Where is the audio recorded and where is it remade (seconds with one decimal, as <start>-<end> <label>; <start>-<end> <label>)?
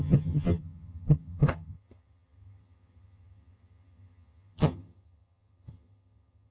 0.0-6.5 remade